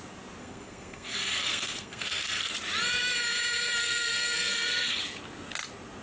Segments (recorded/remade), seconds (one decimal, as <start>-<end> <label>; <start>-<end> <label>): 0.0-0.4 recorded; 0.4-2.5 remade; 2.5-3.8 recorded; 3.8-5.0 remade; 5.0-6.0 recorded